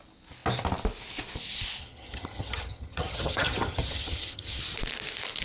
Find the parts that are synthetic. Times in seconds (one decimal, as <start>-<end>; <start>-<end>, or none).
1.8-4.6